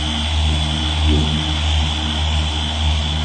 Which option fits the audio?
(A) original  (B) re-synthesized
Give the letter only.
A